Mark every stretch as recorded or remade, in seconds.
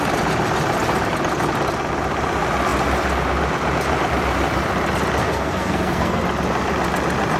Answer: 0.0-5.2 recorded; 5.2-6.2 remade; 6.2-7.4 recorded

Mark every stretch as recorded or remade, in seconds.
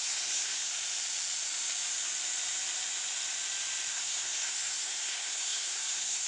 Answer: 0.0-0.7 remade; 0.7-3.9 recorded; 3.9-6.3 remade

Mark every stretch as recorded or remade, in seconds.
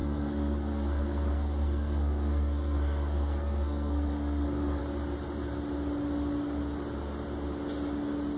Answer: 0.0-4.8 remade; 4.8-8.4 recorded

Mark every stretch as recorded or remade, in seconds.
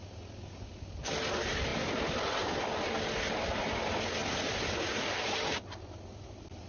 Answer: 0.0-6.7 recorded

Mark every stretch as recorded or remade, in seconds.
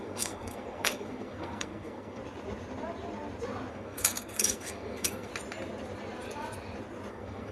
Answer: 0.0-2.2 remade; 2.2-3.7 recorded; 3.7-5.3 remade; 5.3-7.1 recorded; 7.1-7.5 remade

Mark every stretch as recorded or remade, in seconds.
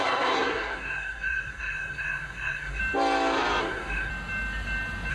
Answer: 0.0-2.8 remade; 2.8-3.6 recorded; 3.6-4.1 remade; 4.1-5.1 recorded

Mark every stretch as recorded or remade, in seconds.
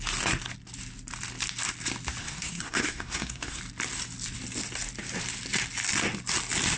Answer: 0.0-2.2 recorded; 2.2-3.6 remade; 3.6-6.8 recorded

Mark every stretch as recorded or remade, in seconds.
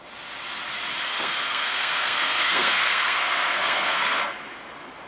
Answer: 0.0-1.1 recorded; 1.1-4.2 remade; 4.2-5.1 recorded